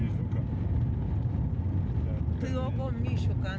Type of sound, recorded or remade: recorded